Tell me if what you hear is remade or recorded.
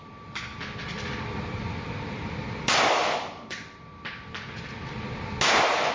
recorded